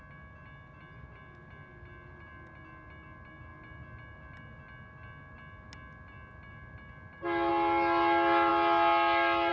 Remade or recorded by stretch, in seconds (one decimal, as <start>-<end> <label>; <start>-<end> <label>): 0.0-9.5 recorded